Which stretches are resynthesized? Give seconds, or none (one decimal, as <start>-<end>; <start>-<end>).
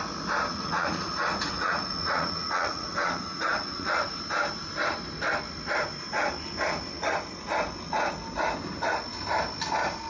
0.5-4.1